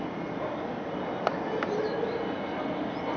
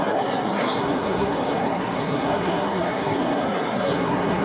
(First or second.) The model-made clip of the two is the second